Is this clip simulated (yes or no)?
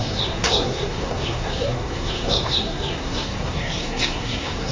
yes